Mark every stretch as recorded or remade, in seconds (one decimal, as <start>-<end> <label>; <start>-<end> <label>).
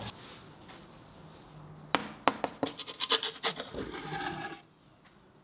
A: 0.0-5.4 recorded